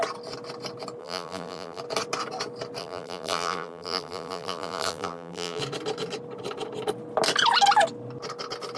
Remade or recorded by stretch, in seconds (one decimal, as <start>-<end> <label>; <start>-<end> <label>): 0.0-1.0 recorded; 1.0-1.8 remade; 1.8-2.8 recorded; 2.8-5.6 remade; 5.6-8.8 recorded